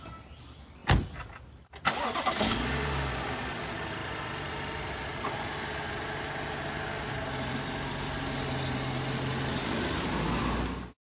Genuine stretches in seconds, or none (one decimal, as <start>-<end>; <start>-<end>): 0.0-11.2